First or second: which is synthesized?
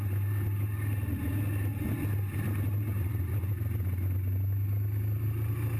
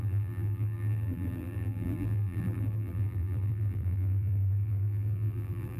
second